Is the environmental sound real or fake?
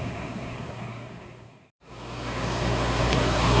fake